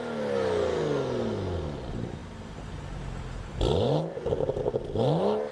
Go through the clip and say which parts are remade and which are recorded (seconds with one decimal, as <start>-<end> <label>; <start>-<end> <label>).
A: 0.0-5.5 recorded